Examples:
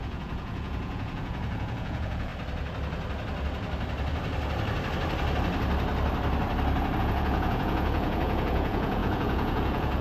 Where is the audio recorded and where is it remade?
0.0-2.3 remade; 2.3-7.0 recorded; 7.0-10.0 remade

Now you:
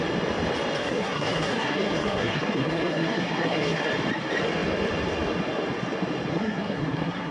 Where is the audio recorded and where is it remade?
0.0-0.8 recorded; 0.8-3.9 remade; 3.9-6.3 recorded; 6.3-7.3 remade